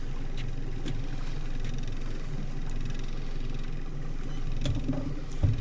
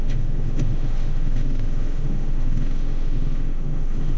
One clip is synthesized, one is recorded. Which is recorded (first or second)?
first